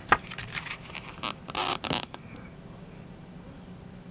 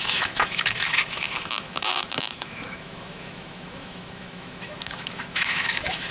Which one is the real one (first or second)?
first